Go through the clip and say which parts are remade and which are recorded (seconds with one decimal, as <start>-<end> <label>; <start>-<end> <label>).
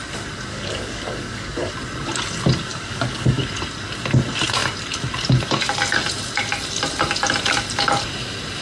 0.0-0.5 recorded; 0.5-1.7 remade; 1.7-2.7 recorded; 2.7-3.4 remade; 3.4-8.6 recorded